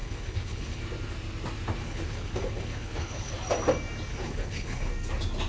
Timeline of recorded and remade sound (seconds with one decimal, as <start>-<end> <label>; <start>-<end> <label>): 0.0-0.8 remade; 0.8-1.8 recorded; 1.8-3.3 remade; 3.3-4.1 recorded; 4.1-4.9 remade; 4.9-5.5 recorded